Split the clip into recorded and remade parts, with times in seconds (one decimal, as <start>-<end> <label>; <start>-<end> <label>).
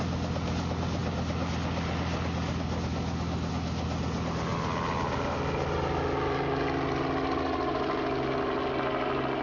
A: 0.0-9.4 recorded